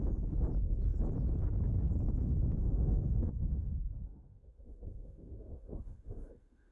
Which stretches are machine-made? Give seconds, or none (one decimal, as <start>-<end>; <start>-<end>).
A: 2.6-6.7